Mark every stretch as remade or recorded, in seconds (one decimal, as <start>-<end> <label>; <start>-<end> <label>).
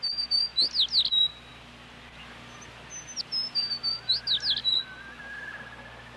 0.0-6.2 recorded